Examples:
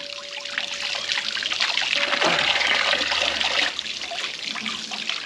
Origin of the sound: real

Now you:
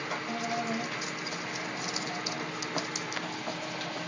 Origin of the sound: real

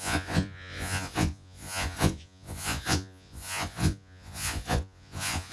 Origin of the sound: fake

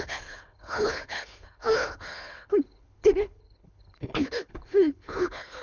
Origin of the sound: fake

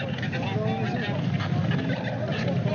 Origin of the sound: real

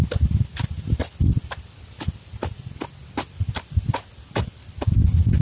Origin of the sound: real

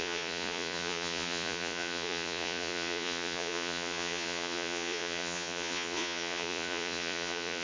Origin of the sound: fake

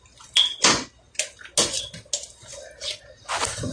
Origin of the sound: real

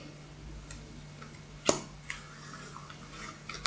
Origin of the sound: real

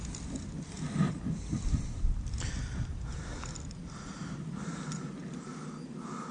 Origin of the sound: real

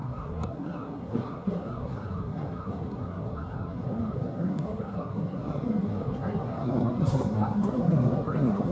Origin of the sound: fake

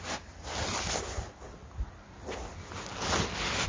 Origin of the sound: real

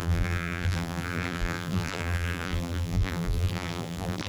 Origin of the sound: fake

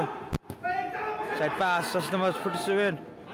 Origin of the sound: real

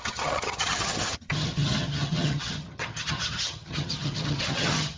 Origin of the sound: fake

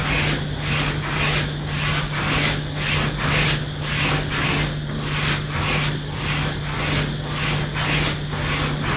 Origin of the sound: real